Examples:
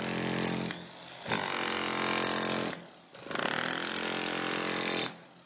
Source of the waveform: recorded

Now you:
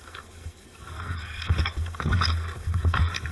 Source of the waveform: remade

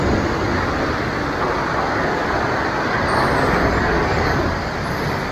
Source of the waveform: recorded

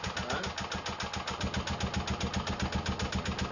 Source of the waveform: recorded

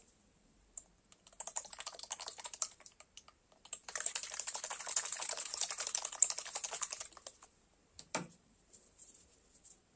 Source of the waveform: remade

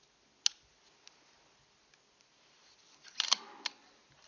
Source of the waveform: recorded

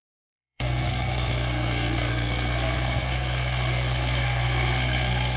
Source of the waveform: remade